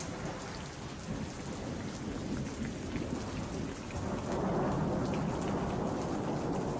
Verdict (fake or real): real